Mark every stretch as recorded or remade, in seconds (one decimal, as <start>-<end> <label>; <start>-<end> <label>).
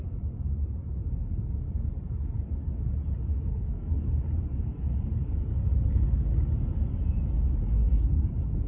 0.0-3.5 recorded; 3.5-4.0 remade; 4.0-8.7 recorded